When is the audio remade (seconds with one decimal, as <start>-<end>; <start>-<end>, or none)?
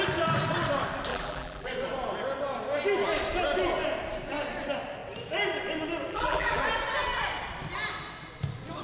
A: 1.1-1.7; 6.1-6.6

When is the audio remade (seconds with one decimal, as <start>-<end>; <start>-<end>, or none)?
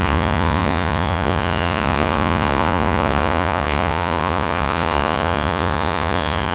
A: 0.0-6.5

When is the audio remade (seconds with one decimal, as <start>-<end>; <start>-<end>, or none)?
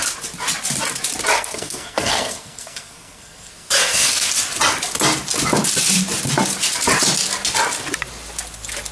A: 1.3-4.3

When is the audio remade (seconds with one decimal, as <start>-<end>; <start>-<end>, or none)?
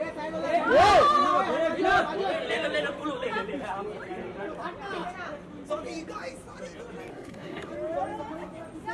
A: 7.1-7.7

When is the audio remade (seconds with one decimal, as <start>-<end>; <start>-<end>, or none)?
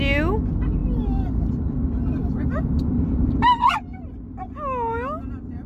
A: none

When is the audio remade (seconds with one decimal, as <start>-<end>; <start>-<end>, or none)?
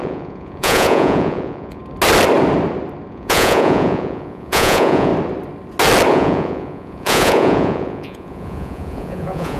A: 0.0-1.8; 3.1-5.1; 6.1-9.6